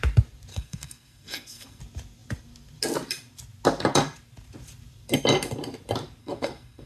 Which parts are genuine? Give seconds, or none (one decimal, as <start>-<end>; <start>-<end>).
0.0-0.5; 1.8-6.2